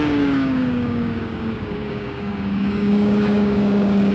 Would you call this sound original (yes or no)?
no